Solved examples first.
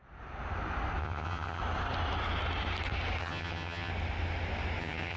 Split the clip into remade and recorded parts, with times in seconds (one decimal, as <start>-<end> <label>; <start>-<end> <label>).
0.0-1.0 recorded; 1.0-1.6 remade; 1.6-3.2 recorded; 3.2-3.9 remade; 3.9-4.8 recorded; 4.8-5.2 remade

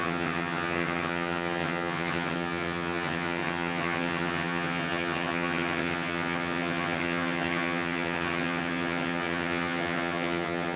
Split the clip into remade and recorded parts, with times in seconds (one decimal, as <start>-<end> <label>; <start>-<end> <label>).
0.0-10.8 remade

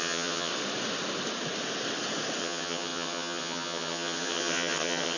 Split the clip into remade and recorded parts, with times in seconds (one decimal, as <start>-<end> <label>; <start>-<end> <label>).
0.0-0.5 remade; 0.5-2.4 recorded; 2.4-5.2 remade